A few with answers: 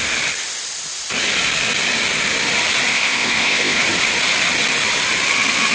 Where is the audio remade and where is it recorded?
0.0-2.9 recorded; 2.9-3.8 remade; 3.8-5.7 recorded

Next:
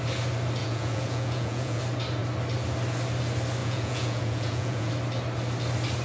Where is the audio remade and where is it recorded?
0.0-0.6 recorded; 0.6-1.8 remade; 1.8-3.6 recorded; 3.6-4.9 remade; 4.9-6.0 recorded

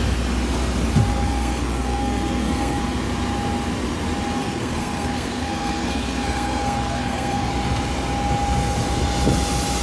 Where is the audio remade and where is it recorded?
0.0-1.1 recorded; 1.1-2.8 remade; 2.8-4.4 recorded; 4.4-7.5 remade; 7.5-9.8 recorded

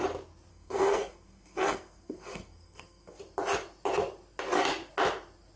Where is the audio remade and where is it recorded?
0.0-0.5 recorded; 0.5-3.2 remade; 3.2-5.6 recorded

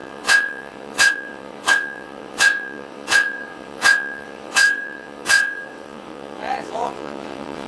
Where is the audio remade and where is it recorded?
0.0-7.7 remade

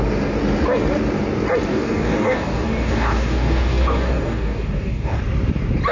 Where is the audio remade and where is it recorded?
0.0-1.7 recorded; 1.7-5.2 remade; 5.2-5.9 recorded